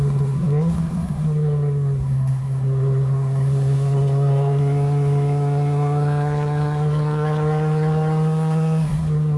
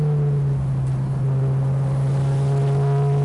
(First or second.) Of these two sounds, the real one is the second